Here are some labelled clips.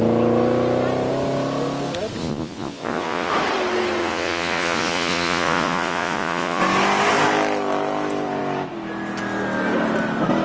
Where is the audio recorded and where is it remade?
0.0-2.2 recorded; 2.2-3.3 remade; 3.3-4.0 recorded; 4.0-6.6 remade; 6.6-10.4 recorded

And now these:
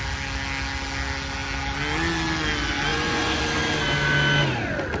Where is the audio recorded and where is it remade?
0.0-2.9 recorded; 2.9-3.4 remade; 3.4-5.0 recorded

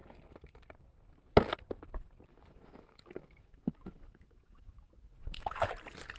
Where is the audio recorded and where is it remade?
0.0-2.3 recorded; 2.3-5.7 remade; 5.7-6.2 recorded